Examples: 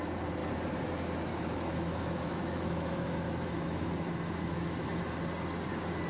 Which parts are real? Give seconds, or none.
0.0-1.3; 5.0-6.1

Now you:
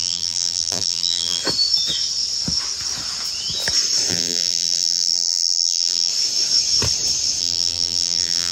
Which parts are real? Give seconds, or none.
1.4-4.1; 6.1-7.4

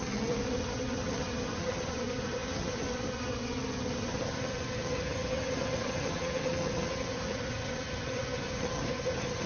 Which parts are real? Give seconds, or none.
none

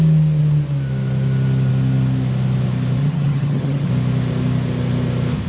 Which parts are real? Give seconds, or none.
0.0-3.0; 3.9-5.5

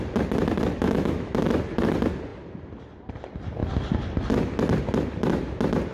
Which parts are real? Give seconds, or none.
0.0-0.8; 1.3-5.9

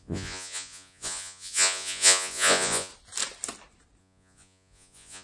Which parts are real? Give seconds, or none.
2.9-4.0